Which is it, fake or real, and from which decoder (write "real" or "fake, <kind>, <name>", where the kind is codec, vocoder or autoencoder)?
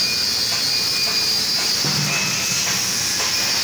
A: real